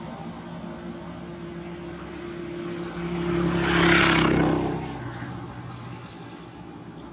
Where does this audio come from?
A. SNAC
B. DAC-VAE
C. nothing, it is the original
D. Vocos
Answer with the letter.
C